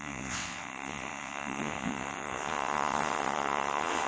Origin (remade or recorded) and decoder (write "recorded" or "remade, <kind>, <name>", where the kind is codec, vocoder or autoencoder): remade, vocoder, WaveNeXt